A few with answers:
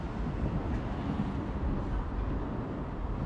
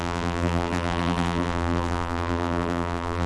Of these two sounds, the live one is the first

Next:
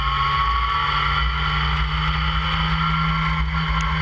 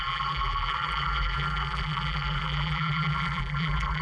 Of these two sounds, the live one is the first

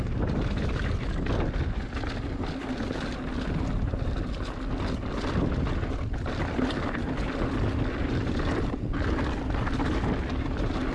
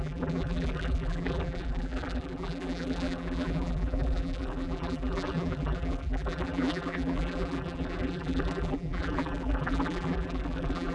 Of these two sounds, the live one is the first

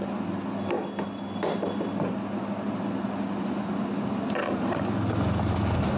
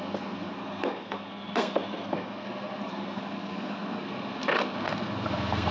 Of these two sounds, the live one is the first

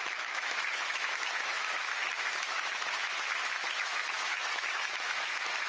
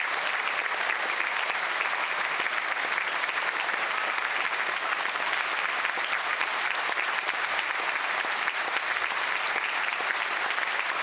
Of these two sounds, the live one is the second